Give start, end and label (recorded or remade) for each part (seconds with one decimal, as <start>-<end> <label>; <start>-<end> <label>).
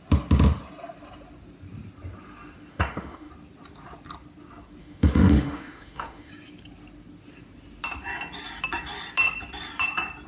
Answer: 0.0-2.7 recorded; 2.7-3.3 remade; 3.3-4.8 recorded; 4.8-6.3 remade; 6.3-10.3 recorded